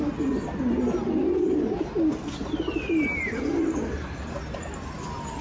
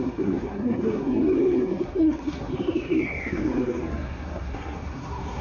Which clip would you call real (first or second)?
first